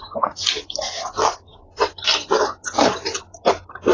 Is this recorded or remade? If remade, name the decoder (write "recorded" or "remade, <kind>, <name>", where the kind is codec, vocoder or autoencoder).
recorded